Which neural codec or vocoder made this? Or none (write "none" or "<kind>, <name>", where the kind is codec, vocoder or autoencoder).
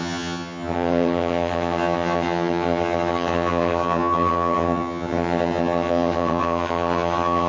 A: vocoder, HiFi-GAN